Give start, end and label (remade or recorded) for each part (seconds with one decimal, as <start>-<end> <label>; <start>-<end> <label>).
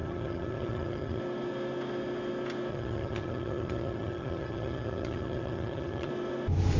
0.0-1.2 remade; 1.2-2.7 recorded; 2.7-6.1 remade; 6.1-6.8 recorded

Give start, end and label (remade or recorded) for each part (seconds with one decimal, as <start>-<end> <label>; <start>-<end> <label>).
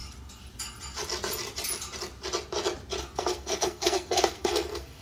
0.0-3.0 recorded; 3.0-5.0 remade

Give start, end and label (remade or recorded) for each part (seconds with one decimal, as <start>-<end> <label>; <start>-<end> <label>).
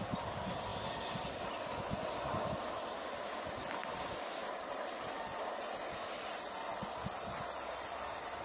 0.0-8.4 recorded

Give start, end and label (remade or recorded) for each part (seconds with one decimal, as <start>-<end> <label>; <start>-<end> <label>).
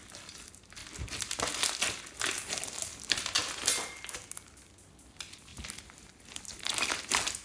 0.0-7.4 recorded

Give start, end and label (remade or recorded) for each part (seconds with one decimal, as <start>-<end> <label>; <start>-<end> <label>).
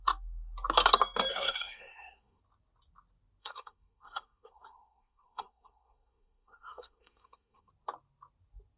0.0-1.3 recorded; 1.3-2.4 remade; 2.4-3.4 recorded; 3.4-7.7 remade; 7.7-8.8 recorded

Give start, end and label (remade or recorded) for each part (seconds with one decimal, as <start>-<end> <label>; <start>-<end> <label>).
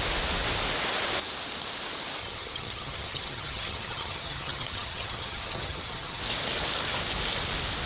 0.0-2.2 recorded; 2.2-6.2 remade; 6.2-7.9 recorded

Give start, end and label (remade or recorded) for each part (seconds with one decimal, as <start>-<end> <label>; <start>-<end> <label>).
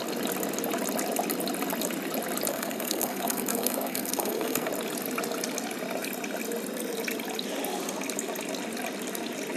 0.0-2.5 recorded; 2.5-4.7 remade; 4.7-9.6 recorded